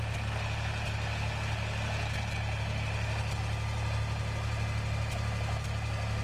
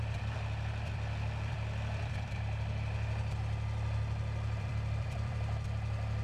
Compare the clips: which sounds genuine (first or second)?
first